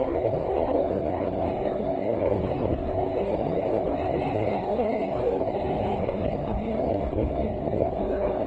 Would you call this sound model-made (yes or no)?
yes